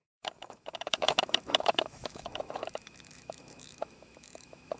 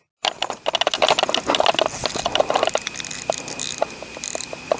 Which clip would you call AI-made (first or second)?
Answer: first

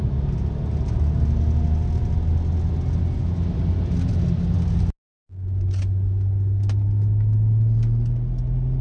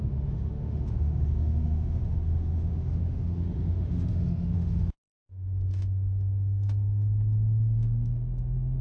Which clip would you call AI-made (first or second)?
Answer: second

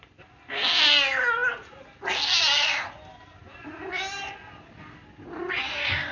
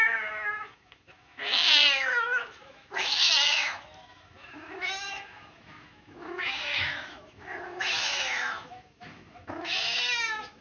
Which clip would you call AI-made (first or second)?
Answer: second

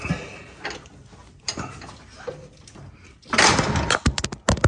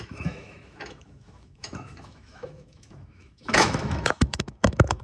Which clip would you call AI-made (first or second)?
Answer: second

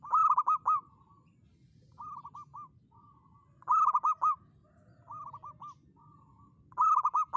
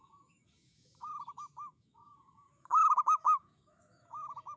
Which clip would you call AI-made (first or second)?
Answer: second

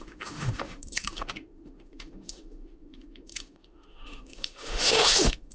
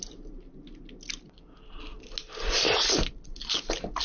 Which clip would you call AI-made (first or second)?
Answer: first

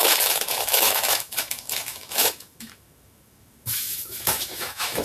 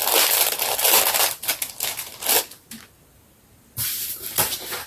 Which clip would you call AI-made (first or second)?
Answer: first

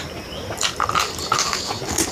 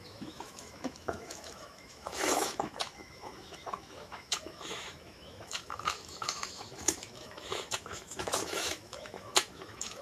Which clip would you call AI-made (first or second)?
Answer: second